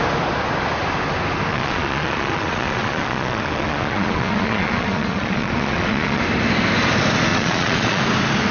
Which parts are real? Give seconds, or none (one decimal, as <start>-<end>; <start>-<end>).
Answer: 0.0-1.5; 6.2-7.3; 8.0-8.5